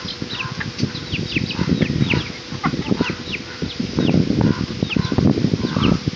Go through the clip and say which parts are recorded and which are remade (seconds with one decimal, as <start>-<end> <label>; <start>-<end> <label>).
0.0-6.2 recorded